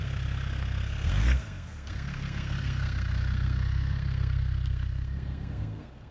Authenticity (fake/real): fake